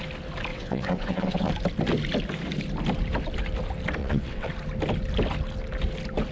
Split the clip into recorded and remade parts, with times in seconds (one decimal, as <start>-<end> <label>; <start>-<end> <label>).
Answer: 0.0-0.5 recorded; 0.5-1.5 remade; 1.5-4.0 recorded; 4.0-4.5 remade; 4.5-6.3 recorded